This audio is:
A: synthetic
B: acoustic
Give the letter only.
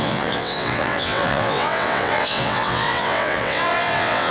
A